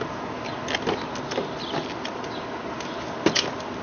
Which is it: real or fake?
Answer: real